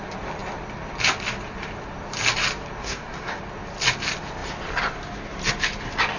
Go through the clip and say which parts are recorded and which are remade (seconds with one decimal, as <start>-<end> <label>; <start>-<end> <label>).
0.0-2.8 recorded; 2.8-3.4 remade; 3.4-6.2 recorded